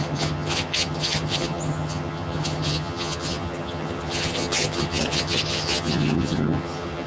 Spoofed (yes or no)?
yes